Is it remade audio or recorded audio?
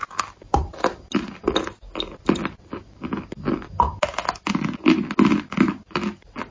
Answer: recorded